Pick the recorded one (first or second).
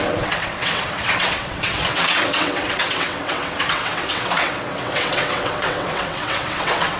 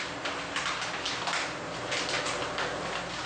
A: second